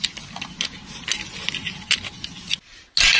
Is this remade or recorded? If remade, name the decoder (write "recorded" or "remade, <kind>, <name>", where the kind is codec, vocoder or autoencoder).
recorded